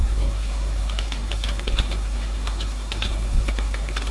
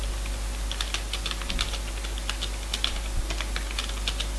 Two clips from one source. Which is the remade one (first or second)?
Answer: first